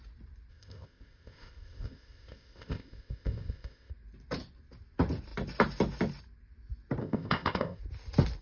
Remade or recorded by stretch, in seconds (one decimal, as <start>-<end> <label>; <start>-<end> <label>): 0.0-0.5 recorded; 0.5-3.9 remade; 3.9-7.0 recorded; 7.0-7.8 remade; 7.8-8.4 recorded